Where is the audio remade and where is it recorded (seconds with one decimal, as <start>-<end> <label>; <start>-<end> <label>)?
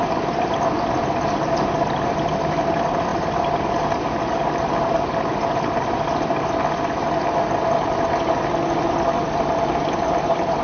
0.0-10.6 recorded